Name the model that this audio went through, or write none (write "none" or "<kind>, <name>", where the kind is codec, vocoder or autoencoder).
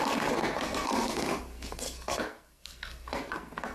codec, SNAC